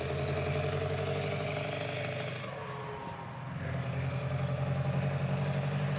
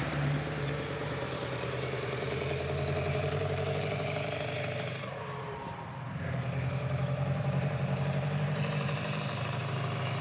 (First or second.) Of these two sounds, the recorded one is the first